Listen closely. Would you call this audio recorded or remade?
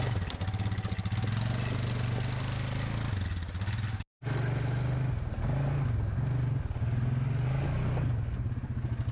recorded